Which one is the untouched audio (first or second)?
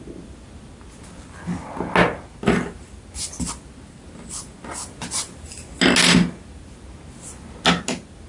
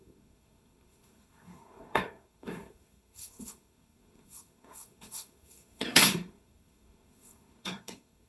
first